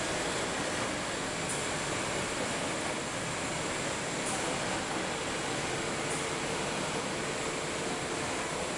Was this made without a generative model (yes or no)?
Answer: yes